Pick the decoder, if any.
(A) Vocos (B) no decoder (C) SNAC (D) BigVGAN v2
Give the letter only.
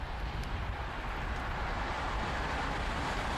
D